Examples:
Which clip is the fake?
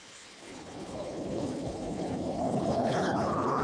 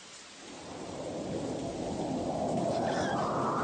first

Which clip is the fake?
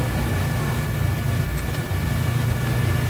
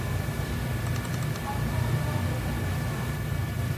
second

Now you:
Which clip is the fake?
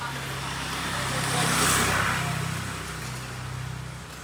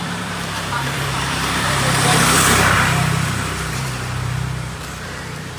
second